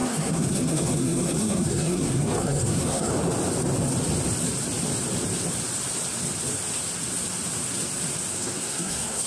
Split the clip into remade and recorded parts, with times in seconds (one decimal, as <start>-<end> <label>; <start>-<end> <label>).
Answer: 0.0-3.1 remade; 3.1-8.3 recorded; 8.3-9.3 remade